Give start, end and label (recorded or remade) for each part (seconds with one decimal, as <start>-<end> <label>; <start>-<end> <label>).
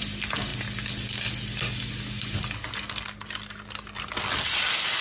0.0-5.0 recorded